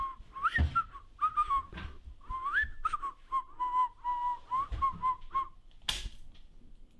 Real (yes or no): yes